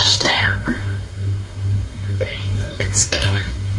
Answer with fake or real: fake